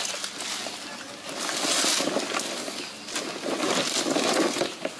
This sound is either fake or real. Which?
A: real